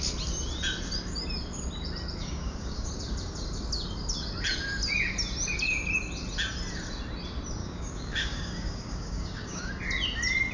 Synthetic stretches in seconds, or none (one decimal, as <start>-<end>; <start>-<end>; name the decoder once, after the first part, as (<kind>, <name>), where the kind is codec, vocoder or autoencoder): 2.2-2.9 (codec, DAC); 7.6-9.7